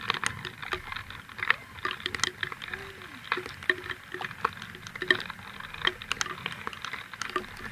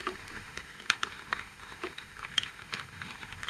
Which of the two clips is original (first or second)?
first